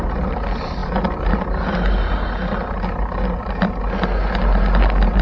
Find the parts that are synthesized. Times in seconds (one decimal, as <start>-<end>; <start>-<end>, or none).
none